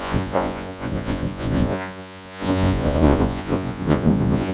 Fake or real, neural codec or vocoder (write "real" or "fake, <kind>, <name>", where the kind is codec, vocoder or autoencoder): fake, vocoder, Vocos